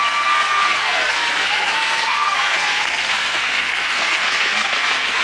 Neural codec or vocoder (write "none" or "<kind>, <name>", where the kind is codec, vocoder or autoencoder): codec, SNAC